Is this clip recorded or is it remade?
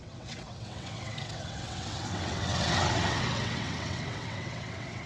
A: remade